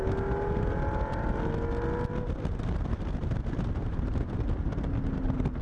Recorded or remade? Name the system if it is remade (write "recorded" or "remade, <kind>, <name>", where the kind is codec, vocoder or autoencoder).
recorded